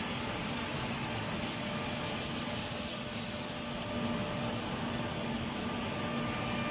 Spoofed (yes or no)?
no